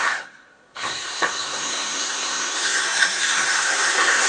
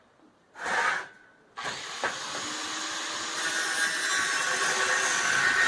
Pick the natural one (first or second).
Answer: second